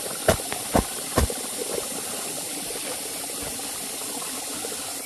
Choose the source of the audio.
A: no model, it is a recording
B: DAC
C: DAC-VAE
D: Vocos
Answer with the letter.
A